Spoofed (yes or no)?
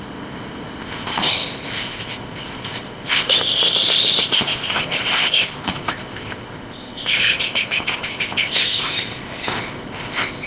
yes